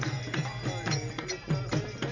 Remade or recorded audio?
recorded